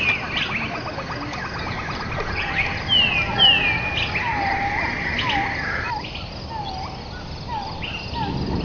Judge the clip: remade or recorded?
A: recorded